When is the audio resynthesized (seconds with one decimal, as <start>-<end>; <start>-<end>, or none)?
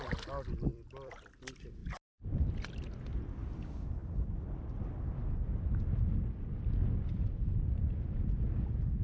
0.7-1.3; 4.0-4.7; 6.8-8.0